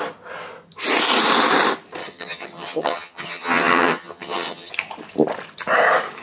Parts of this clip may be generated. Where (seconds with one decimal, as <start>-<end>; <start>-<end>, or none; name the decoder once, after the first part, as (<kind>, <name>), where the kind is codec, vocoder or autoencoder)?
2.0-4.7 (vocoder, HiFi-GAN)